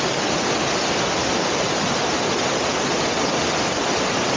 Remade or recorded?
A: recorded